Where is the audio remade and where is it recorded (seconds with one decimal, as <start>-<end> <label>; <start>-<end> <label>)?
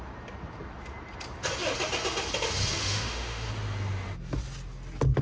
0.0-2.8 recorded; 2.8-3.5 remade; 3.5-5.2 recorded